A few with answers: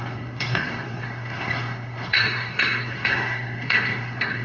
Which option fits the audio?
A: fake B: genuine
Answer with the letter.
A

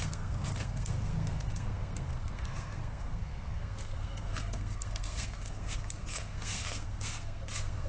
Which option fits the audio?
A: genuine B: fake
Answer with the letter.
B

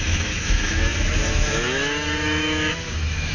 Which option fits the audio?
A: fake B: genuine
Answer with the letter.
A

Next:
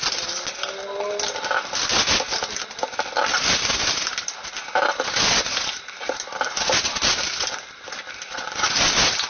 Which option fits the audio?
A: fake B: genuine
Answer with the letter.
B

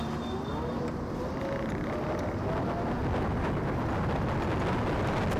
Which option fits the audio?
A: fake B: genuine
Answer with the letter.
B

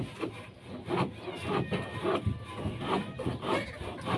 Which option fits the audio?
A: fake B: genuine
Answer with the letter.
B